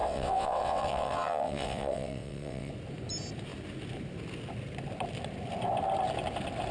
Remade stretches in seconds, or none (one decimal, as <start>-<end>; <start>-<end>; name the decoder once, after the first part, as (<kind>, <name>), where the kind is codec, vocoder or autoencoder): 0.0-2.7 (vocoder, WaveNeXt)